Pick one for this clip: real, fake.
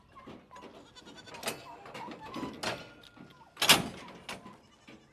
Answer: real